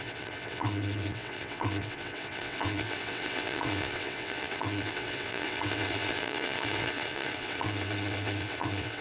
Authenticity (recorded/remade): remade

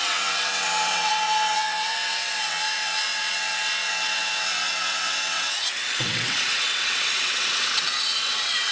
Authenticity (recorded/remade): remade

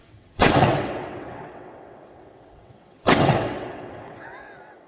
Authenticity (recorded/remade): remade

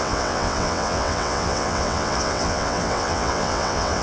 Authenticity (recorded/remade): remade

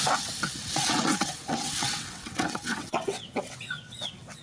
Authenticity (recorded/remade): remade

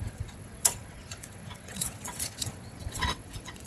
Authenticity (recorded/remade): remade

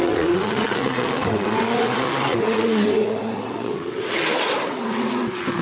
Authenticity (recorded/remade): remade